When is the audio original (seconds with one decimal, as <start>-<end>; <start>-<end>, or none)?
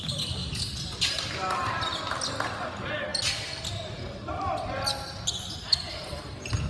0.0-6.7